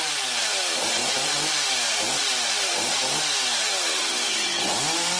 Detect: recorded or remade remade